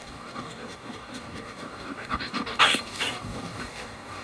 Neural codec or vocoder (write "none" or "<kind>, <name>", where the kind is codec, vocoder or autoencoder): codec, DAC